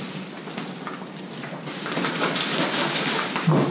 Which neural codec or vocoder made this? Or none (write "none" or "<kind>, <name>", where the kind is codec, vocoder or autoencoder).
vocoder, BigVGAN v2